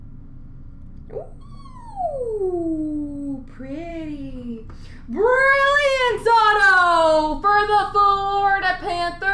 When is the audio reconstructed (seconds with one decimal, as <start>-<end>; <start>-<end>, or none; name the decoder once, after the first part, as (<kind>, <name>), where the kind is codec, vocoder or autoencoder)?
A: 3.9-4.5 (autoencoder, DAC-VAE); 5.3-6.4